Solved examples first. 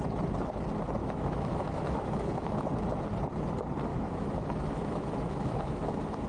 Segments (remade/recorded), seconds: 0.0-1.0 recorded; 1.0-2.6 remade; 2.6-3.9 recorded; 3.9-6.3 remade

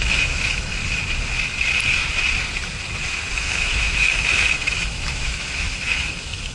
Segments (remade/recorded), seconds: 0.0-0.8 remade; 0.8-3.3 recorded; 3.3-6.5 remade

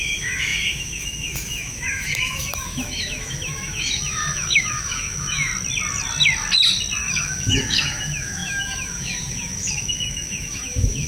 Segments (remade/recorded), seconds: 0.0-5.5 remade; 5.5-7.0 recorded; 7.0-11.1 remade

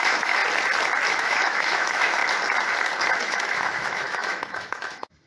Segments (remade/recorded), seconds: 0.0-0.4 remade; 0.4-1.1 recorded; 1.1-2.2 remade; 2.2-3.2 recorded; 3.2-5.3 remade

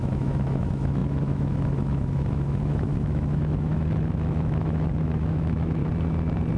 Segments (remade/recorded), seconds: 0.0-5.8 remade; 5.8-6.6 recorded

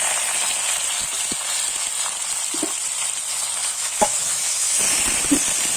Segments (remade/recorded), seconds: 0.0-3.6 recorded; 3.6-4.8 remade; 4.8-5.8 recorded

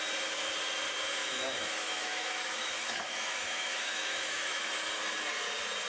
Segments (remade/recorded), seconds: 0.0-1.2 recorded; 1.2-4.7 remade; 4.7-5.9 recorded

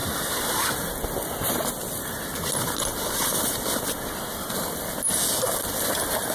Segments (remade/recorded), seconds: 0.0-6.3 recorded